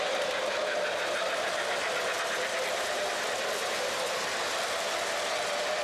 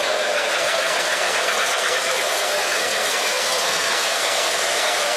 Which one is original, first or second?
first